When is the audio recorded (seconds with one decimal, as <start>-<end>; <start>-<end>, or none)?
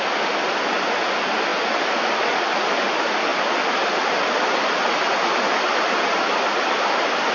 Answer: 0.0-7.3